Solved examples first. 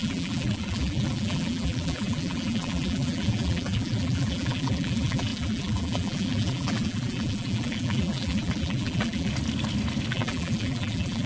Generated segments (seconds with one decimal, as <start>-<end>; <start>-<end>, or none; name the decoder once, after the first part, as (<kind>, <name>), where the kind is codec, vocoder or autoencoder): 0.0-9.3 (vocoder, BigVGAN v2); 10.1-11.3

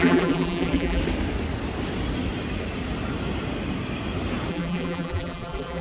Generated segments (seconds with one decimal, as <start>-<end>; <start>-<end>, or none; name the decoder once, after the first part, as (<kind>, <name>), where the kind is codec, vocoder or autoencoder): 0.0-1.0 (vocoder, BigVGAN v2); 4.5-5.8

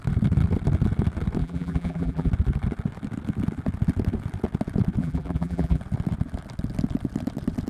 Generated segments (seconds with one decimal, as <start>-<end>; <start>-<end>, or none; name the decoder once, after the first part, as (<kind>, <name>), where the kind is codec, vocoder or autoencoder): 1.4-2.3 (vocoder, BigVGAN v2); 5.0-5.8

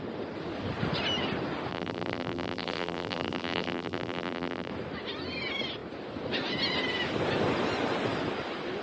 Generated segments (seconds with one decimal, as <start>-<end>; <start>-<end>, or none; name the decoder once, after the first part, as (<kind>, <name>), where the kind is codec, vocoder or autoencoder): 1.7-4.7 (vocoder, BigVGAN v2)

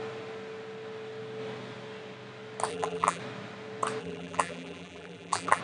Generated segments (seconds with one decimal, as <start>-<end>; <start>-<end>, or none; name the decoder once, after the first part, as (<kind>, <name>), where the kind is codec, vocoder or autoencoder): 2.7-3.2 (vocoder, BigVGAN v2); 4.0-5.6

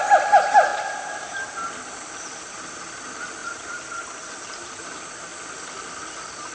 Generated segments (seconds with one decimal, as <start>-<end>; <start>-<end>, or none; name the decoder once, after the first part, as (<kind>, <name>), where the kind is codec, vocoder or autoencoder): 3.4-4.7 (vocoder, BigVGAN v2)

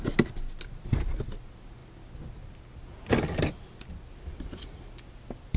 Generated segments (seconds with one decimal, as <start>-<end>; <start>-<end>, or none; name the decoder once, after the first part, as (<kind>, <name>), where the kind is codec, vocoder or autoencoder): none

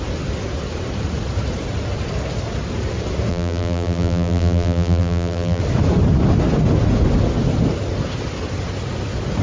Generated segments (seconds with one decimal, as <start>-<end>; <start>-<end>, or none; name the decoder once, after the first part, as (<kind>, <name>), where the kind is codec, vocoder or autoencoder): 3.3-5.6 (vocoder, BigVGAN v2)